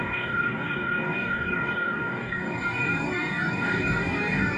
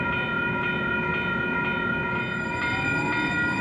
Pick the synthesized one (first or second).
first